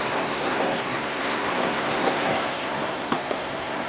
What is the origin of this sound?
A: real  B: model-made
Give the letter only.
B